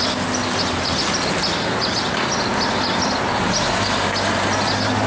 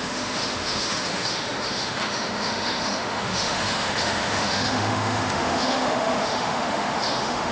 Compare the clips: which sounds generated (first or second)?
second